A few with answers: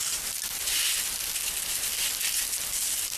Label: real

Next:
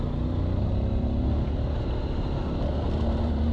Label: real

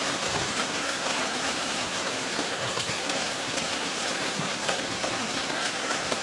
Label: fake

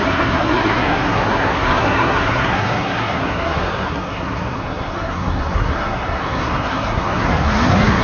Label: fake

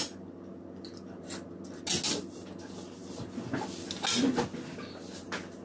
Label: real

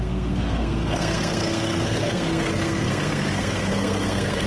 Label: fake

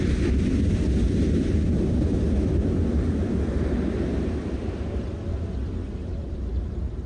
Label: real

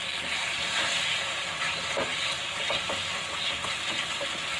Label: real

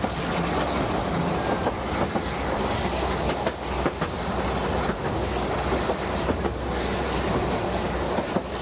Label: real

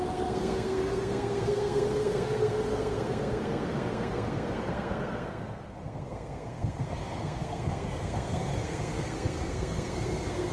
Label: fake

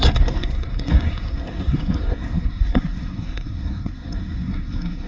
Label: fake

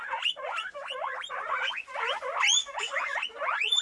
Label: real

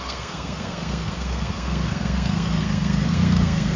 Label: fake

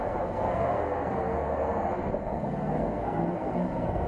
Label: fake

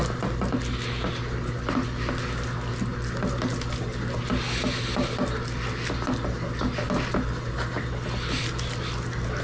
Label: real